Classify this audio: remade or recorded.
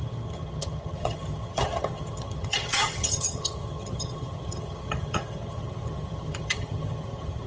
remade